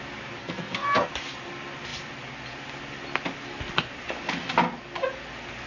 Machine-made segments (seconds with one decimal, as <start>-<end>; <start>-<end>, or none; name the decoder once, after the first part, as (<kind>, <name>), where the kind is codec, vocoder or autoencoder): 0.4-1.1 (codec, SNAC)